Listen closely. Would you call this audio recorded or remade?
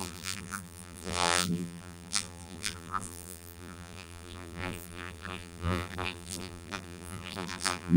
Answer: remade